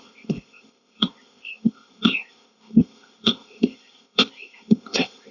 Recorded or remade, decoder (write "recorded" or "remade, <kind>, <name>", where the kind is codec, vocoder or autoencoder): remade, codec, ZipCodec